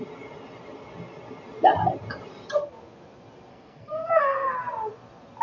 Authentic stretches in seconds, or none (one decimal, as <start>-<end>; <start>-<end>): 0.0-3.5; 4.5-5.4